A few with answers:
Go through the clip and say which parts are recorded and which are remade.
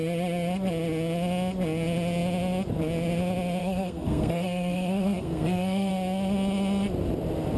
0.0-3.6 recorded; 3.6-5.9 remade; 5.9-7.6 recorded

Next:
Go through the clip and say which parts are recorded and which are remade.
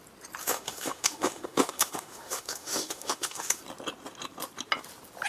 0.0-0.4 recorded; 0.4-3.6 remade; 3.6-5.3 recorded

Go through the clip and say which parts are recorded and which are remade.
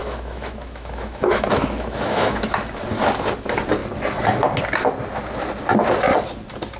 0.0-2.8 remade; 2.8-6.8 recorded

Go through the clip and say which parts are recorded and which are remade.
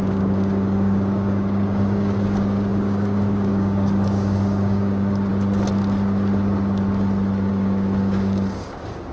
0.0-5.3 remade; 5.3-7.5 recorded; 7.5-9.1 remade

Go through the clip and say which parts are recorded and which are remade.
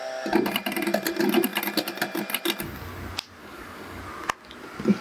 0.0-3.4 recorded; 3.4-4.0 remade; 4.0-5.0 recorded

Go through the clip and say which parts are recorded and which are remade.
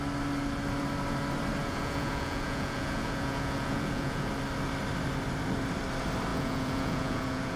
0.0-1.6 recorded; 1.6-4.3 remade; 4.3-6.3 recorded; 6.3-7.6 remade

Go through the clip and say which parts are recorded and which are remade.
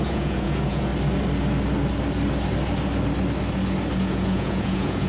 0.0-0.9 remade; 0.9-4.0 recorded; 4.0-5.1 remade